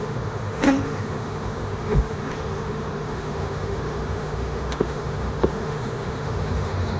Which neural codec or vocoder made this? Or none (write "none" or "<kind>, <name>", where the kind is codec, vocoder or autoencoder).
autoencoder, DAC-VAE